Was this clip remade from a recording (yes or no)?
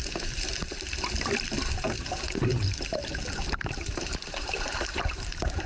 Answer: yes